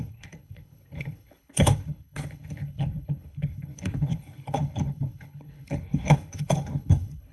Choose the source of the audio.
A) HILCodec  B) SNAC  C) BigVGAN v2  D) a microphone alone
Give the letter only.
A